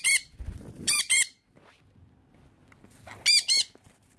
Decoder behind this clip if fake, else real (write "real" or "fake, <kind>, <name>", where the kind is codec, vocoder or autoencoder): real